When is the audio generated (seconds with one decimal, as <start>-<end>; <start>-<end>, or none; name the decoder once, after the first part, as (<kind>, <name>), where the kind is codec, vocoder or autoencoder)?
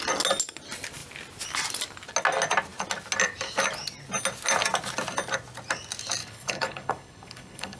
6.2-7.8 (codec, HILCodec)